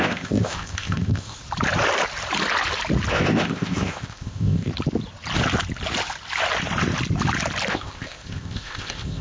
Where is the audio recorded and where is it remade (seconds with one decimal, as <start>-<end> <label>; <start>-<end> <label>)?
0.0-1.4 remade; 1.4-3.1 recorded; 3.1-4.7 remade; 4.7-7.7 recorded; 7.7-9.2 remade